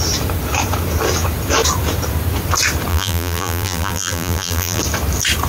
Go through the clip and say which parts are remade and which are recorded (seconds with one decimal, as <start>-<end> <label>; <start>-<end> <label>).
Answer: 0.0-2.9 recorded; 2.9-4.8 remade; 4.8-5.5 recorded